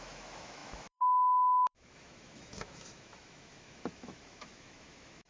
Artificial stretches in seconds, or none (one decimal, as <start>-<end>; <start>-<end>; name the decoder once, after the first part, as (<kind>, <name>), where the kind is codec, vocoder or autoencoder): 0.0-5.3 (autoencoder, DAC-VAE)